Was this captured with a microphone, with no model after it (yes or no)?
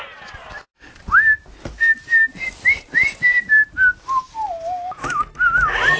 yes